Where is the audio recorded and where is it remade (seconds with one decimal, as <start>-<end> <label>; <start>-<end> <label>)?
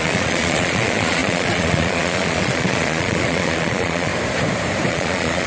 0.0-4.1 remade; 4.1-4.9 recorded; 4.9-5.5 remade